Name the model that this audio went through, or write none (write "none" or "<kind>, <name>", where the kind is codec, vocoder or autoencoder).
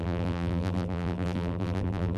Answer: vocoder, BigVGAN v2